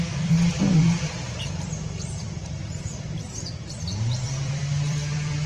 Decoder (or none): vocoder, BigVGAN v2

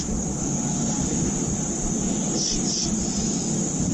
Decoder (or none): none